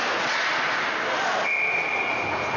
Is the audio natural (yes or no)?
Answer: yes